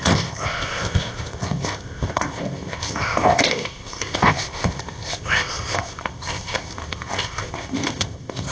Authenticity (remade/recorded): remade